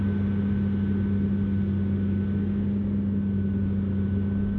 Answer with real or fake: real